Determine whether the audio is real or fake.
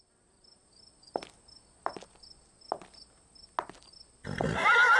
real